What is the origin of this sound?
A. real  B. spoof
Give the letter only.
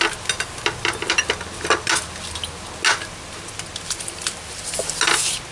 A